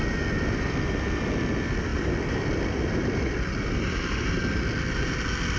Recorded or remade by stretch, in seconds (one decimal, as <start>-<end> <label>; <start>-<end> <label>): 0.0-1.9 recorded; 1.9-4.4 remade; 4.4-5.6 recorded